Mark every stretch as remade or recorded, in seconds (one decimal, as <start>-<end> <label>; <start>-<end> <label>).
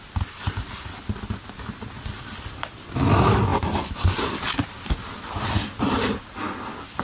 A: 0.0-7.0 recorded